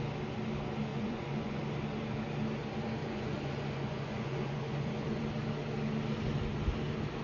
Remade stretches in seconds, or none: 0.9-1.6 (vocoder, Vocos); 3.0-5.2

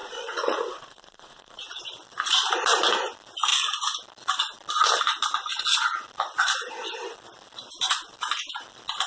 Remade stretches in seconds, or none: 0.0-1.8 (vocoder, Vocos)

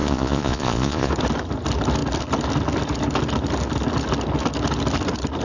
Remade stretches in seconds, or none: 0.0-1.1 (vocoder, Vocos)

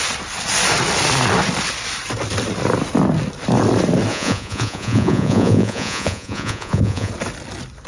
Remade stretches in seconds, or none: 4.1-7.1 (vocoder, Vocos)